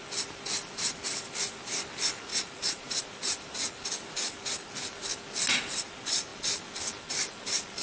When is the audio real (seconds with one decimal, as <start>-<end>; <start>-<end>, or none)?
0.0-2.3; 3.0-7.8